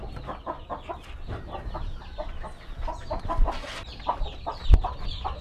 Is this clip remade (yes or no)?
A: no